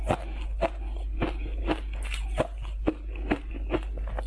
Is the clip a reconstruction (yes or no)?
no